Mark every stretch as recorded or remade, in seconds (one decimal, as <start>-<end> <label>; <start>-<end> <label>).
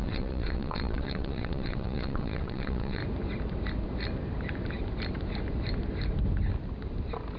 0.0-3.0 remade; 3.0-7.4 recorded